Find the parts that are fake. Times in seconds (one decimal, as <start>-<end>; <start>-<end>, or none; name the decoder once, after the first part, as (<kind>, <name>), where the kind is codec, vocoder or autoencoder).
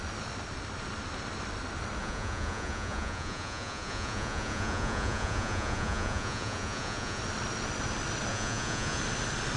2.0-7.2 (vocoder, Vocos); 8.3-9.0